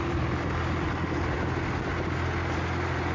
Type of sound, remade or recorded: recorded